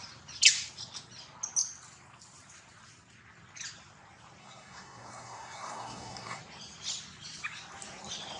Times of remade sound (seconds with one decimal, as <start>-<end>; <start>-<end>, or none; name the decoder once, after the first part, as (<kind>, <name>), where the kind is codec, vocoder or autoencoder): 4.4-6.4 (codec, SNAC)